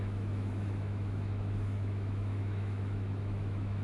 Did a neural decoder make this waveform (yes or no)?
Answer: yes